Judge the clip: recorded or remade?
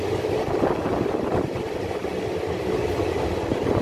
recorded